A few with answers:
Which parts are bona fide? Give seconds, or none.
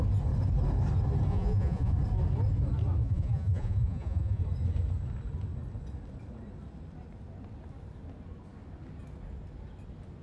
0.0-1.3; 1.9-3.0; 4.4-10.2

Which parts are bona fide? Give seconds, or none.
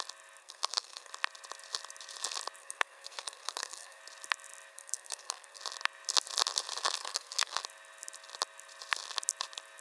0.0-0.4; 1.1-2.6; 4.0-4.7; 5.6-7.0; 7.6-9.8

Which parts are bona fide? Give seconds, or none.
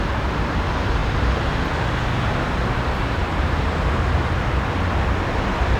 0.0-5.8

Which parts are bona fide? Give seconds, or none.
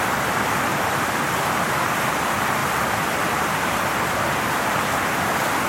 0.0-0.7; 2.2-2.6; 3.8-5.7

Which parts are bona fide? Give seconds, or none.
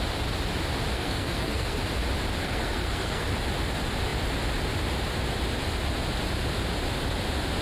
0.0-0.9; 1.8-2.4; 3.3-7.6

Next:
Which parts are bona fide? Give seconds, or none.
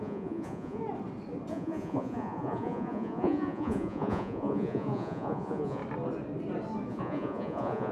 0.8-1.5; 5.8-6.9